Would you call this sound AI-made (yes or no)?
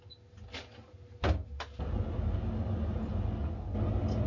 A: no